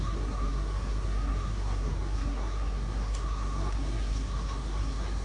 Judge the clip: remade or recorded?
remade